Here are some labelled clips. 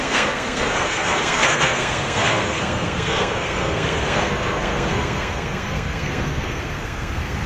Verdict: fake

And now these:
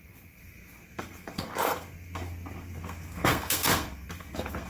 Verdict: fake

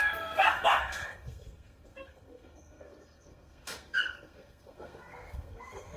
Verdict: fake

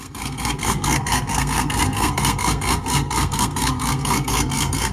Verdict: fake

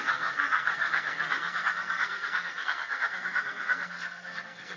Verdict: fake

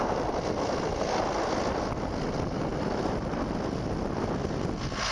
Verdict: real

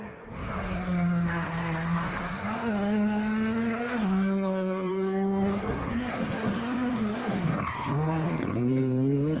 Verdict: fake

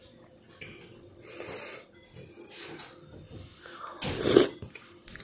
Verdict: real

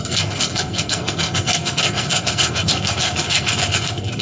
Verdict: fake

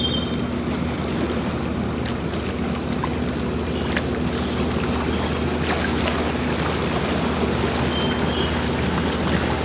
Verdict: real